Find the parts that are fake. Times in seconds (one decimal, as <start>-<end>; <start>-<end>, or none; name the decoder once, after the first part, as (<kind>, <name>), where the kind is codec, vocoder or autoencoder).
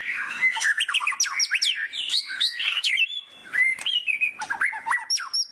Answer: 0.0-0.8 (autoencoder, DAC-VAE); 2.1-2.9